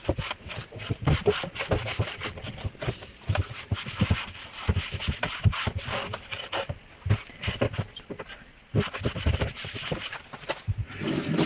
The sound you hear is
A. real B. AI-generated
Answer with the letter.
A